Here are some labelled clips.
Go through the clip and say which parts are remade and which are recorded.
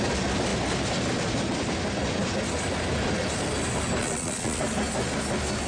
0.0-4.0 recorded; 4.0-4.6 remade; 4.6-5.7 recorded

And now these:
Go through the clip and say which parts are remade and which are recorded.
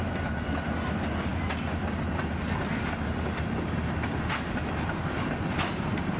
0.0-6.2 recorded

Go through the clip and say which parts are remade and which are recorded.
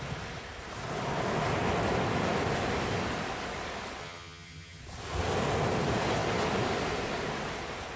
0.0-4.0 recorded; 4.0-4.8 remade; 4.8-8.0 recorded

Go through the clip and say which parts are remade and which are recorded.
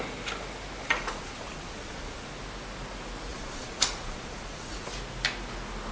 0.0-0.8 recorded; 0.8-2.3 remade; 2.3-3.3 recorded; 3.3-4.9 remade; 4.9-5.9 recorded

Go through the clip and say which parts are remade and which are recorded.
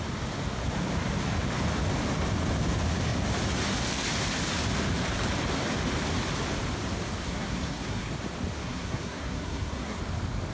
0.0-7.2 recorded; 7.2-8.1 remade; 8.1-8.6 recorded; 8.6-10.0 remade; 10.0-10.5 recorded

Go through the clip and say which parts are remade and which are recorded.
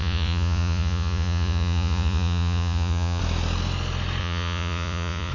0.0-3.2 remade; 3.2-4.2 recorded; 4.2-5.3 remade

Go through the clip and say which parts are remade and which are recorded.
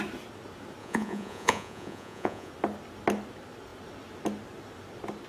0.0-0.8 recorded; 0.8-2.5 remade; 2.5-5.3 recorded